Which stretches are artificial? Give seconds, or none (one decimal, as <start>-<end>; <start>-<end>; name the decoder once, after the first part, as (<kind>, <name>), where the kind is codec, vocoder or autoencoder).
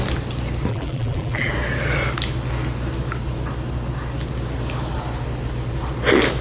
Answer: 0.7-1.5 (vocoder, BigVGAN v2)